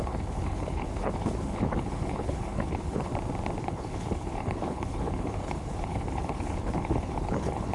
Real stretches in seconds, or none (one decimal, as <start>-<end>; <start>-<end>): 3.1-3.6